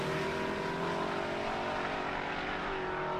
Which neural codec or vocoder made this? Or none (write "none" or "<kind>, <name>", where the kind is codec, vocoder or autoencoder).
none